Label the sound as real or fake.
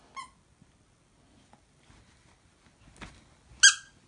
real